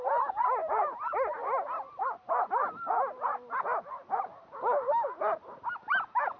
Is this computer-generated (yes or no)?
no